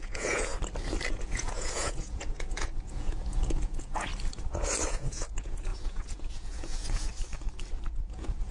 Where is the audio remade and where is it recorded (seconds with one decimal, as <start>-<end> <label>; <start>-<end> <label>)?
0.0-0.5 remade; 0.5-1.1 recorded; 1.1-4.1 remade; 4.1-4.9 recorded; 4.9-7.1 remade; 7.1-7.9 recorded; 7.9-8.5 remade